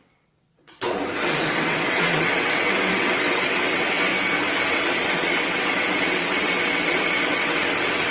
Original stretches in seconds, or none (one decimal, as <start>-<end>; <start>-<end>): 4.1-4.7